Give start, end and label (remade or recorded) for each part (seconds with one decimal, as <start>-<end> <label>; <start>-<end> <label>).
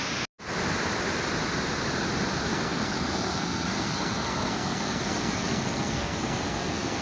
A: 0.0-2.5 recorded; 2.5-7.0 remade